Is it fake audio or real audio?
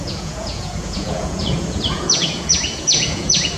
fake